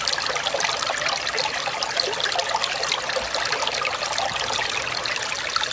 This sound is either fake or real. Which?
real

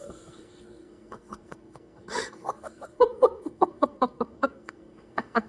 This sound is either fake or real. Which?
fake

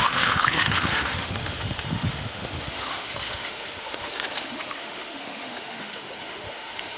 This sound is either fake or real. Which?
fake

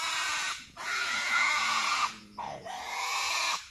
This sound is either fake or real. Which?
fake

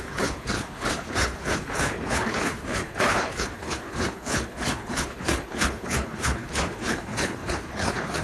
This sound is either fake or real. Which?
fake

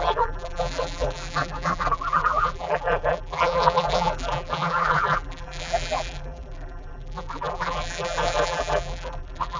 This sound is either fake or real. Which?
fake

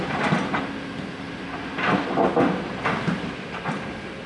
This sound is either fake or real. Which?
real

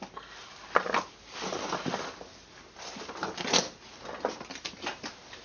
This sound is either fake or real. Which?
real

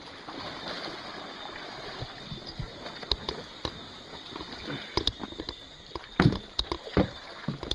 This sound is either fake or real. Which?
real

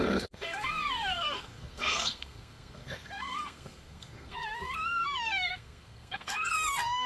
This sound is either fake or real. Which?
fake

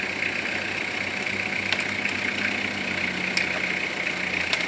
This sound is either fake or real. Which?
real